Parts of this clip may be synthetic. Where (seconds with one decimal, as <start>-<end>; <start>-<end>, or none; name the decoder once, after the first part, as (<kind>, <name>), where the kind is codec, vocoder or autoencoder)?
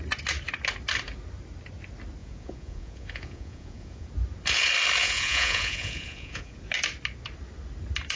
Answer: 2.2-4.1 (vocoder, Vocos); 5.0-6.6